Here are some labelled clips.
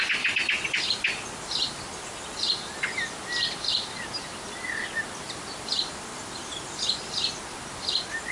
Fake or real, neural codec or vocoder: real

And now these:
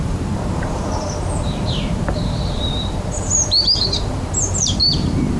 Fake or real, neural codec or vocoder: fake, vocoder, BigVGAN v2